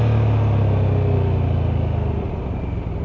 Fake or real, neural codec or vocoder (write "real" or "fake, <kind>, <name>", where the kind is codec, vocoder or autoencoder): real